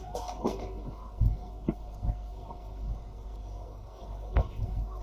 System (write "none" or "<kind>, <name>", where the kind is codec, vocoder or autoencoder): codec, SNAC